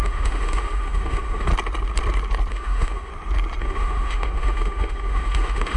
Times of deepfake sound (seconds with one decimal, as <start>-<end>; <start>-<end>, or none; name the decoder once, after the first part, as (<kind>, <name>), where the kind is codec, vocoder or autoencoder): 0.0-1.5 (autoencoder, DAC-VAE); 2.5-3.1; 3.6-5.8